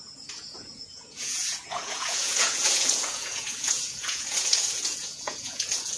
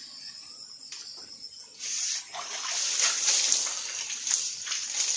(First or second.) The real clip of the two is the second